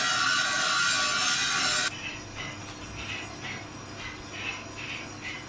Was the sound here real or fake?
real